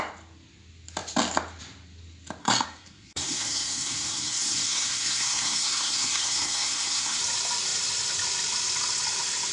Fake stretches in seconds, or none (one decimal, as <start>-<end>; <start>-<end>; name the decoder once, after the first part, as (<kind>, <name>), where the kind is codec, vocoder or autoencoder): 2.4-7.2 (codec, SNAC)